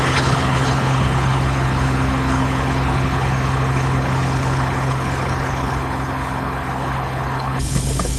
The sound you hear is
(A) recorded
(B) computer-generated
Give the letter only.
B